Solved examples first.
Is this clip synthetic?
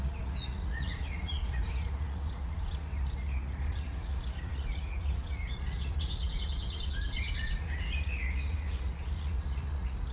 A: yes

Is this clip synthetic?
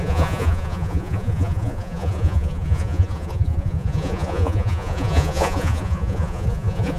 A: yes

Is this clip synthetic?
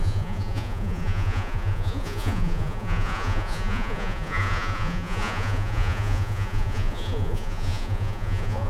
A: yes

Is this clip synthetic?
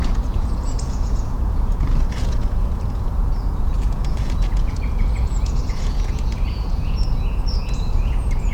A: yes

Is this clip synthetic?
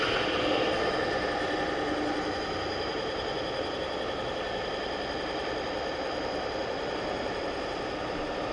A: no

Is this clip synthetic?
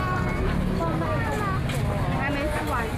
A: no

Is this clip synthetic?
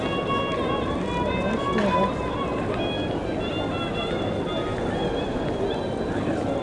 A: no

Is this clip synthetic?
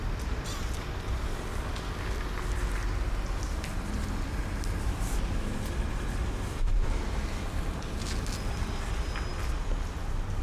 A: no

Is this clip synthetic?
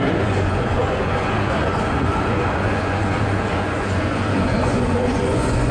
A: yes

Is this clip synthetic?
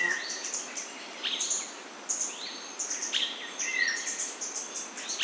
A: no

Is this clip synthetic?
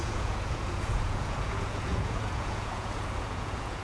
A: yes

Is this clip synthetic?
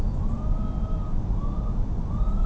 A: no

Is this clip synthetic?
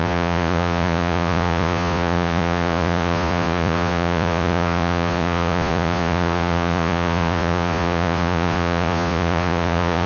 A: yes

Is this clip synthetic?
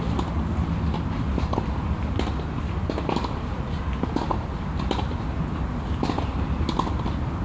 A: no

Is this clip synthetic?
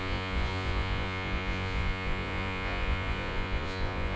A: yes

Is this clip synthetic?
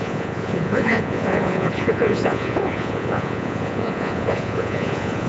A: yes